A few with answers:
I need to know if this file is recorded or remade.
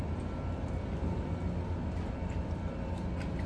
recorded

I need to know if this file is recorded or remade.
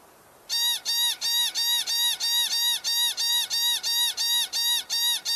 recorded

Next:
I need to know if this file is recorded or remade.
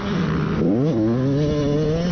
recorded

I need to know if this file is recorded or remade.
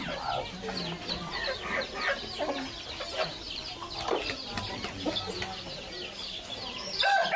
recorded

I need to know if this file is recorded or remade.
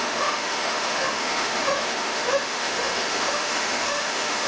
remade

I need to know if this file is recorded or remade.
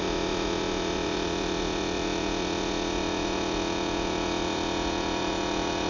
remade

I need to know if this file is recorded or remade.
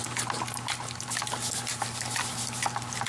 recorded